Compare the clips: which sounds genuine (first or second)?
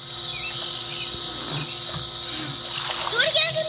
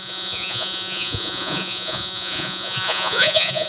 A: first